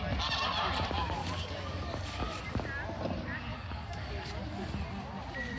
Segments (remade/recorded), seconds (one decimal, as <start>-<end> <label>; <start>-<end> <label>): 0.0-1.2 recorded; 1.2-2.4 remade; 2.4-3.5 recorded; 3.5-4.3 remade; 4.3-5.6 recorded